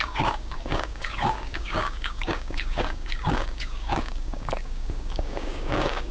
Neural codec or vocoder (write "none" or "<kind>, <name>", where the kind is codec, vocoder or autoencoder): codec, DAC